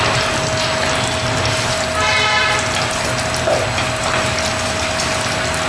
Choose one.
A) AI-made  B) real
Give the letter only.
B